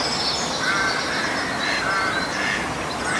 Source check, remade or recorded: recorded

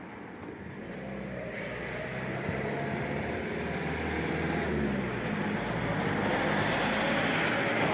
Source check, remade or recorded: recorded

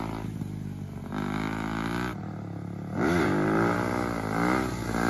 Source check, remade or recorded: recorded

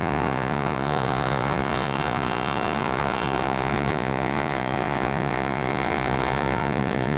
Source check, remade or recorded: remade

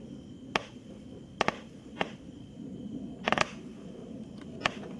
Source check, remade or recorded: recorded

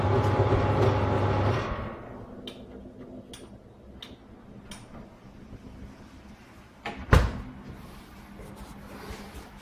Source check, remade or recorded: recorded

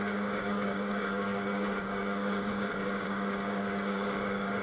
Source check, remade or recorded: remade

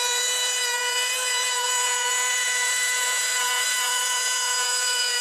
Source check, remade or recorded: remade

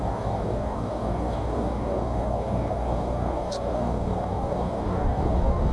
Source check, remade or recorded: remade